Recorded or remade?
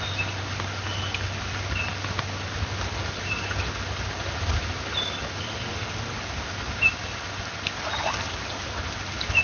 recorded